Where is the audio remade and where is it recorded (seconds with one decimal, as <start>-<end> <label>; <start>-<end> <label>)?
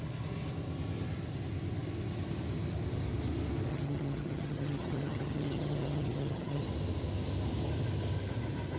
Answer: 0.0-3.7 recorded; 3.7-6.6 remade; 6.6-8.8 recorded